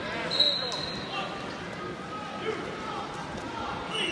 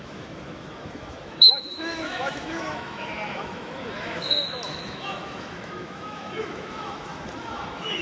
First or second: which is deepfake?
second